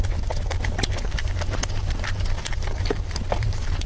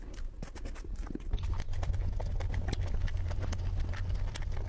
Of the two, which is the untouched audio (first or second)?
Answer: second